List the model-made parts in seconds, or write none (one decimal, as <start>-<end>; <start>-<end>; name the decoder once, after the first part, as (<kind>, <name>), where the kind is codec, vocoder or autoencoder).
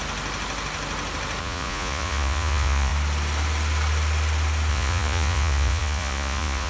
1.4-2.9 (vocoder, Vocos); 4.7-6.7